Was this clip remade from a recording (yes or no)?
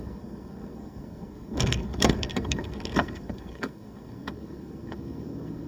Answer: yes